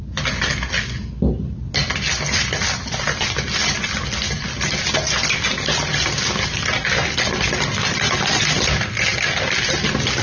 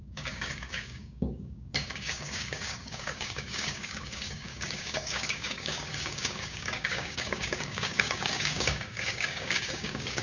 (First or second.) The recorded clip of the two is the first